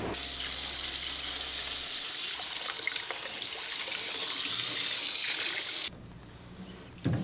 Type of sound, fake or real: real